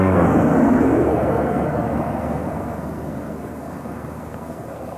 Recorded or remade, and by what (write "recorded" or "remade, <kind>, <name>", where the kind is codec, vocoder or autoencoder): remade, codec, SNAC